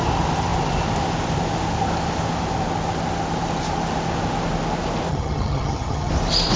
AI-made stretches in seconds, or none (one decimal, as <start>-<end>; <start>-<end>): 5.1-6.1